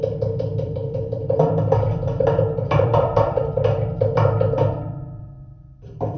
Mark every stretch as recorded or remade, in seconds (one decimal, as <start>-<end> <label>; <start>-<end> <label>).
0.0-0.5 recorded; 0.5-3.4 remade; 3.4-6.2 recorded